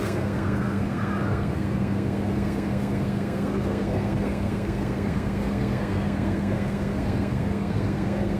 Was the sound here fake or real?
fake